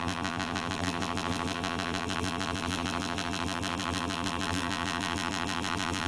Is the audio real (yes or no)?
no